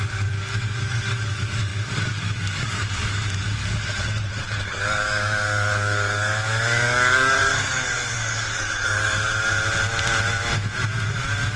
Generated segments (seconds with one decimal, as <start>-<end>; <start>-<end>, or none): 0.0-9.3